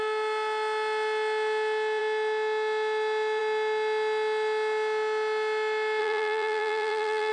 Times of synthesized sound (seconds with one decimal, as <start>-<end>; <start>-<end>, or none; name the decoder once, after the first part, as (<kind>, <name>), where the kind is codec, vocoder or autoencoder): 6.0-7.3 (vocoder, BigVGAN v2)